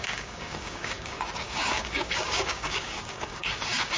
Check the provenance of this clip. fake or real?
fake